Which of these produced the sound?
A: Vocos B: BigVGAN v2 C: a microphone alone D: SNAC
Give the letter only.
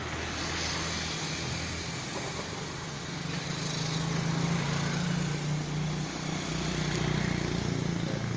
C